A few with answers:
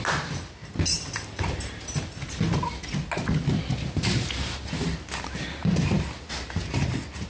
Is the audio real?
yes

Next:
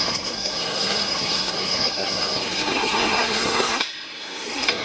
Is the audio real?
no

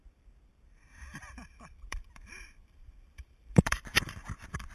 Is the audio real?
no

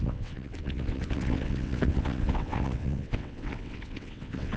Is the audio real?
no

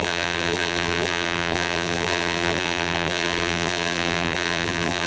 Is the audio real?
no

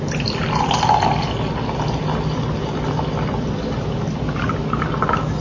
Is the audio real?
yes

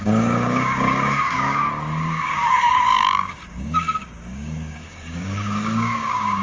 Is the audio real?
no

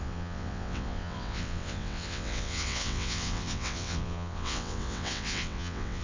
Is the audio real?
no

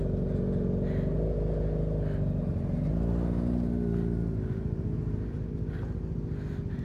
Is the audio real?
yes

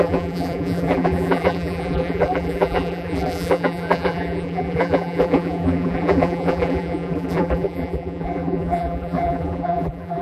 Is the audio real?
no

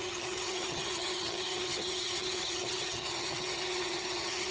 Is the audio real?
no